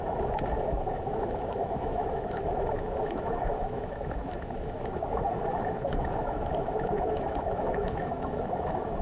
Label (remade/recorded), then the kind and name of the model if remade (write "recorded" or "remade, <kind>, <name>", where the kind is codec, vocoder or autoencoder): remade, autoencoder, DAC-VAE